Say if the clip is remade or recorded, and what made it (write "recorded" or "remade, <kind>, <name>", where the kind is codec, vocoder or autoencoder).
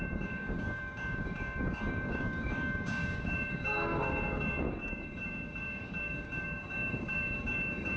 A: remade, codec, DAC